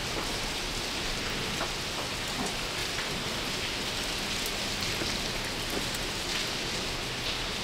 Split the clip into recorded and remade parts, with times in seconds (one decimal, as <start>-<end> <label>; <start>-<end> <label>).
0.0-1.2 remade; 1.2-2.8 recorded; 2.8-3.4 remade; 3.4-7.6 recorded